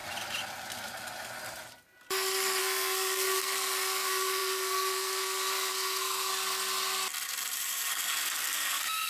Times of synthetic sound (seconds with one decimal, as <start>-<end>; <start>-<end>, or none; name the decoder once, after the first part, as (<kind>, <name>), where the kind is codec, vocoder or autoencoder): 2.6-6.3 (codec, SNAC); 7.9-9.1